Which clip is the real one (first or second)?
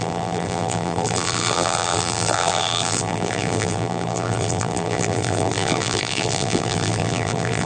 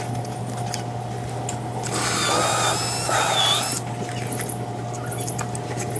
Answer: second